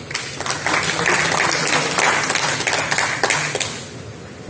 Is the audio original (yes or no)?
yes